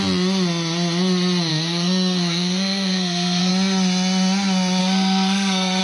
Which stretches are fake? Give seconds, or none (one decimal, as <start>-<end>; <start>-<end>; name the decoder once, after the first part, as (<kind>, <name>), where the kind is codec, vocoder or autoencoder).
1.5-3.5 (codec, SNAC); 4.8-5.8